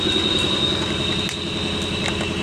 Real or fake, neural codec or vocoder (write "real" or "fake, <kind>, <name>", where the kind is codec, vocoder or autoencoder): real